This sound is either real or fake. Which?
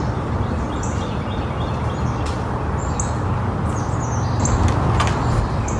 real